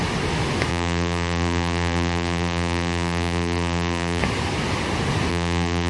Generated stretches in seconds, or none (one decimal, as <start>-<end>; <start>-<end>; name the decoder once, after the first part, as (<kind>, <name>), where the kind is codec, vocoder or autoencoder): 0.7-4.2 (vocoder, BigVGAN v2); 5.3-5.9